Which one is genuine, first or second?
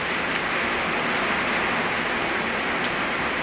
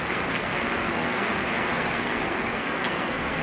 first